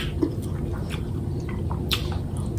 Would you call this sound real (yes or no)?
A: yes